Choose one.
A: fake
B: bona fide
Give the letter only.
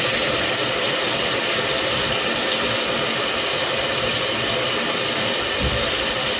B